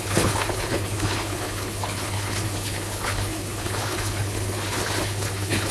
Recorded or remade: remade